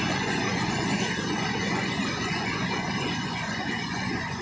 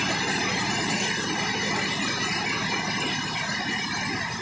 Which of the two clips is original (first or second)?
second